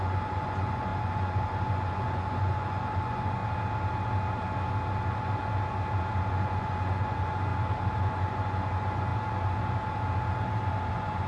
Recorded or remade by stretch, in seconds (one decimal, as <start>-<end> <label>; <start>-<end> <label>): 0.0-3.4 remade; 3.4-6.3 recorded; 6.3-7.5 remade; 7.5-8.0 recorded; 8.0-9.1 remade; 9.1-10.9 recorded; 10.9-11.3 remade